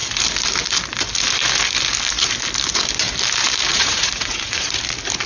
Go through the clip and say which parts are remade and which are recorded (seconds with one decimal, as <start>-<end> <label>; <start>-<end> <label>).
0.0-3.7 recorded; 3.7-4.8 remade; 4.8-5.3 recorded